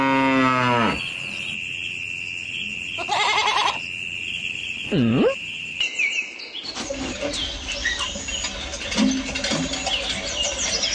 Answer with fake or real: real